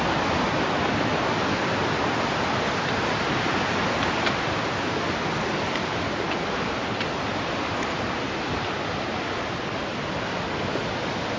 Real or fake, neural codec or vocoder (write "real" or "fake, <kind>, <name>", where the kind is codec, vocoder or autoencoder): real